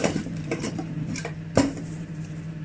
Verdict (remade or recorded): remade